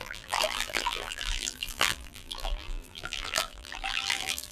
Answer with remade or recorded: remade